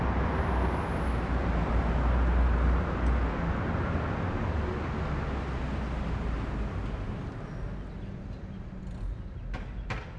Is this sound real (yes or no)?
yes